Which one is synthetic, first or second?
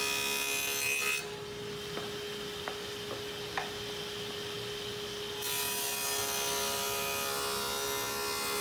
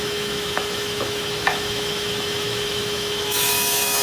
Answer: second